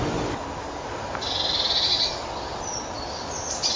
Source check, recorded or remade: recorded